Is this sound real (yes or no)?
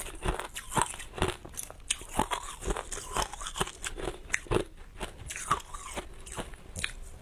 yes